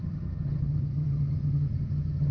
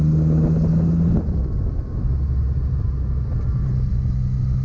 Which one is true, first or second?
second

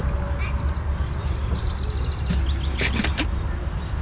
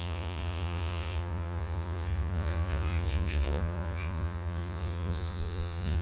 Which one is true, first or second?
first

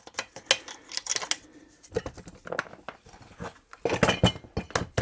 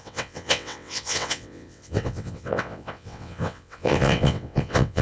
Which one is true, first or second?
first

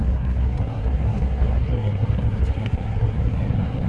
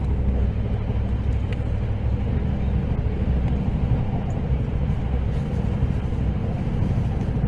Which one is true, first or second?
second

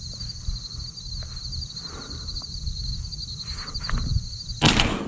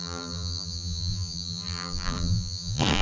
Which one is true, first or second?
first